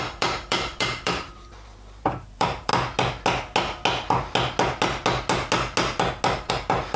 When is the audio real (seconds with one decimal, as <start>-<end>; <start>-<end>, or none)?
2.7-6.5